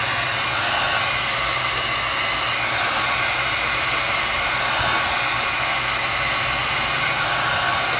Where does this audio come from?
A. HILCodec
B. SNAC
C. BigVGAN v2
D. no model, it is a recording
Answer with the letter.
D